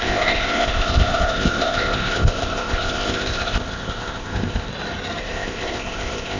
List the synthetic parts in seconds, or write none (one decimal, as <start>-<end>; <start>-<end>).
0.0-4.7; 5.2-6.4